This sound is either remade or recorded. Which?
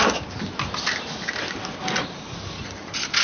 recorded